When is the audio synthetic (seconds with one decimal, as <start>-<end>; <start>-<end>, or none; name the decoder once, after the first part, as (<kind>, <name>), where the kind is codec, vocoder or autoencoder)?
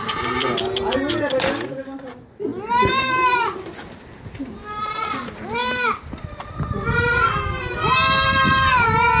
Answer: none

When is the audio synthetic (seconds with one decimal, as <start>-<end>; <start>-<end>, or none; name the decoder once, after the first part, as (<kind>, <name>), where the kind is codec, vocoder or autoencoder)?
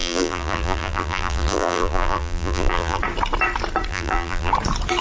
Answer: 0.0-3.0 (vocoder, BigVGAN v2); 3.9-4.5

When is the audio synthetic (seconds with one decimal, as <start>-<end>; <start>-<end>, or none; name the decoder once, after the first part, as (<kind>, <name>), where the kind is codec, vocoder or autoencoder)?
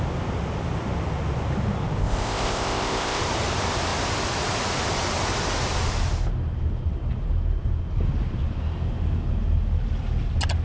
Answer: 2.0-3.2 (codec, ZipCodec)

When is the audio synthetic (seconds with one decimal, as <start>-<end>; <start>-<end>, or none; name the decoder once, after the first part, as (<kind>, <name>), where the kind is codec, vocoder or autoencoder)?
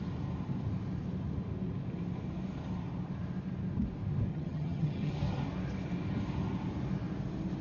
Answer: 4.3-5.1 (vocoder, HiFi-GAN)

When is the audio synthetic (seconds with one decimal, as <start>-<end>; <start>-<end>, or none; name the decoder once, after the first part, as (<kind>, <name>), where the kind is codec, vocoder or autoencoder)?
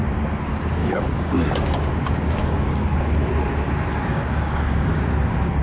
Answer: 0.8-3.3 (codec, DAC); 4.1-5.0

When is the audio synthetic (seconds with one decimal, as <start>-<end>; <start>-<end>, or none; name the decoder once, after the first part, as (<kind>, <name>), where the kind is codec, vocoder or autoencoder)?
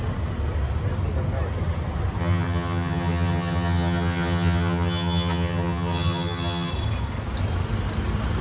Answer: 2.2-6.7 (vocoder, HiFi-GAN)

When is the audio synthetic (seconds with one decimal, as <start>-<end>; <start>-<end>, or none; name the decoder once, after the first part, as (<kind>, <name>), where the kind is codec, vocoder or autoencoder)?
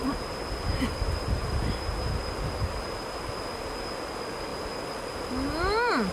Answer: 0.7-2.9 (vocoder, BigVGAN v2)